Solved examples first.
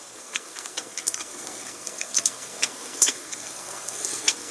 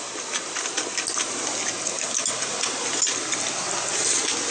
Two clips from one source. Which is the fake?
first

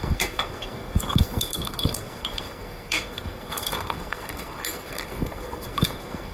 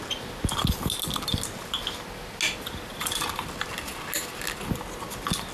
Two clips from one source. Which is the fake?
first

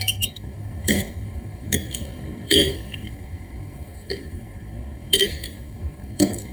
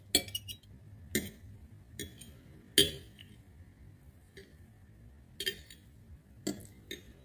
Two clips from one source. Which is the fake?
first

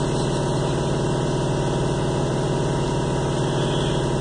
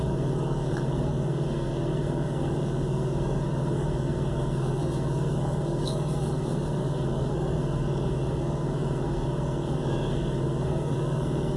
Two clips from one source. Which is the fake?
second